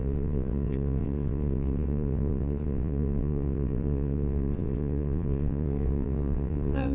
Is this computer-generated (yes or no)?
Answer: yes